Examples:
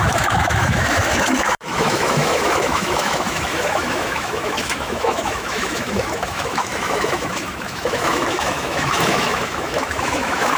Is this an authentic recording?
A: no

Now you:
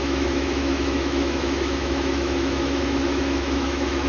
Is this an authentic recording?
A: no